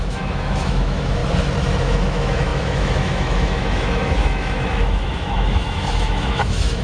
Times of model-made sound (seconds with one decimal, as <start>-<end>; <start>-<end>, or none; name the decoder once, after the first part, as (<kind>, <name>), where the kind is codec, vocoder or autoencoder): 0.0-1.2 (autoencoder, DAC-VAE); 1.8-6.8

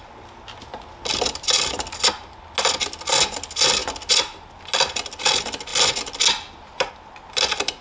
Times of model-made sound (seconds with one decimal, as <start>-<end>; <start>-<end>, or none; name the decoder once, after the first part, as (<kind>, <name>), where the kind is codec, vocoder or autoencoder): none